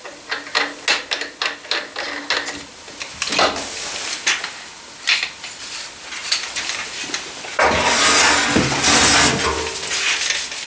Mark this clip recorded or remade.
recorded